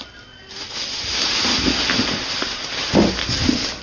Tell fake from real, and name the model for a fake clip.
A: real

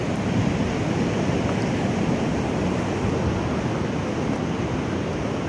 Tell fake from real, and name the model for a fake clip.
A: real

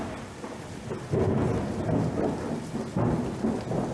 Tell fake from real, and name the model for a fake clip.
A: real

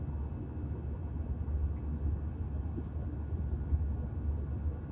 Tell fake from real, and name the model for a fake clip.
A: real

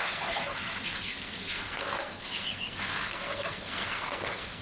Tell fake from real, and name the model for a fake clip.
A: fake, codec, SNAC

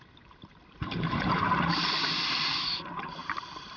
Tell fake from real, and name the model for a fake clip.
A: fake, vocoder, BigVGAN v2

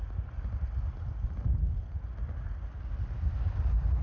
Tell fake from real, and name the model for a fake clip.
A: real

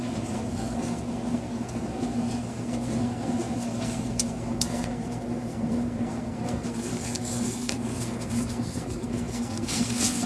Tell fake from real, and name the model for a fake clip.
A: fake, codec, SNAC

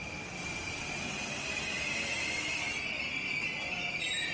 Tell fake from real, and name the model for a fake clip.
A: real